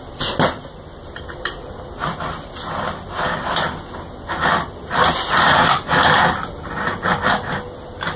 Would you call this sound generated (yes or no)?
no